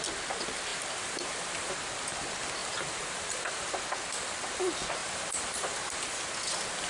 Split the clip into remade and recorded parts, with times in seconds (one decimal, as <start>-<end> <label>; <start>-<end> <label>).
0.0-0.7 recorded; 0.7-1.7 remade; 1.7-2.6 recorded; 2.6-3.7 remade; 3.7-5.0 recorded; 5.0-6.0 remade; 6.0-6.9 recorded